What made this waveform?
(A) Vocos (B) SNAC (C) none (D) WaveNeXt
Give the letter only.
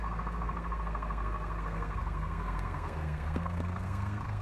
B